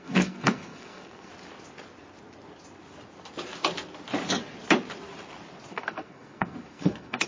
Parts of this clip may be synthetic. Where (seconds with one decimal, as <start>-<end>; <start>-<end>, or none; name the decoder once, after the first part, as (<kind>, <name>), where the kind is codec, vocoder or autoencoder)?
0.0-1.3 (codec, SNAC); 5.7-7.3